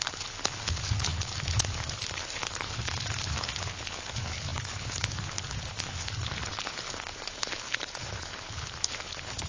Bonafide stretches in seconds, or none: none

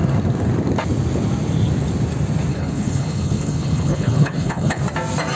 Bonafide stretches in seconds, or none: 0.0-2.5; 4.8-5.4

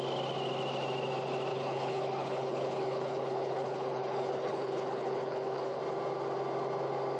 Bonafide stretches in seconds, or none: 0.0-1.5; 5.8-7.2

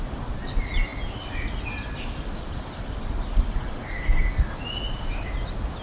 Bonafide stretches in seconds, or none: 0.0-5.8

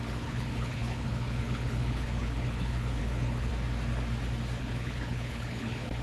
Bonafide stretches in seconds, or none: 3.5-4.6

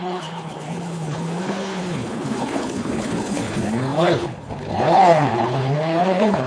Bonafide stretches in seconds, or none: none

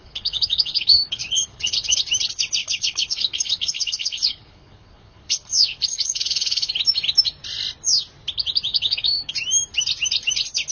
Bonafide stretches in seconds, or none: 2.0-2.6; 6.7-8.7; 9.3-10.7